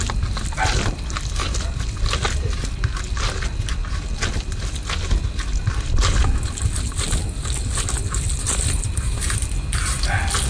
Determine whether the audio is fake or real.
real